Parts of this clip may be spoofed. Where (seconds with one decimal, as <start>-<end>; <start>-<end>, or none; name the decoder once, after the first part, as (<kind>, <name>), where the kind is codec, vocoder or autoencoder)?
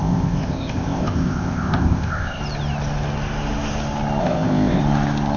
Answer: 0.0-2.4 (codec, ZipCodec); 4.2-4.8